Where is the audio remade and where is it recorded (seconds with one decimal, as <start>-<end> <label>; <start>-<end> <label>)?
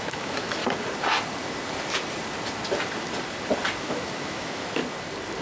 0.0-0.6 remade; 0.6-3.8 recorded; 3.8-4.8 remade; 4.8-5.4 recorded